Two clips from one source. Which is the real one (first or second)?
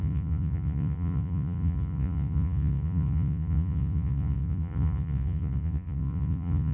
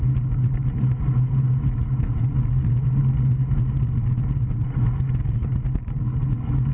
second